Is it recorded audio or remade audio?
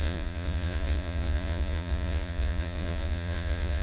remade